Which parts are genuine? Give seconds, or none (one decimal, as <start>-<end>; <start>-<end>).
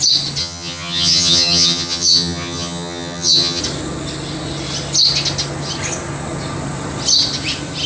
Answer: 0.0-0.4; 3.6-7.9